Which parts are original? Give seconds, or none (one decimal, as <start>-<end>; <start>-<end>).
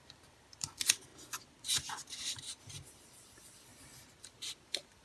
1.1-2.6; 3.7-4.2